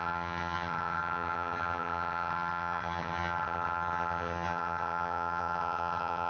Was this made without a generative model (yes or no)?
no